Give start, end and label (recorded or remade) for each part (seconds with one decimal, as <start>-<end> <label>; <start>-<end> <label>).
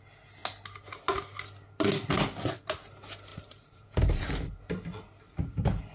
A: 0.0-3.3 recorded; 3.3-4.3 remade; 4.3-5.9 recorded